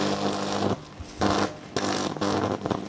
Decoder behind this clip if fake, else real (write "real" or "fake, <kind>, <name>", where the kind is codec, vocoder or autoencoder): real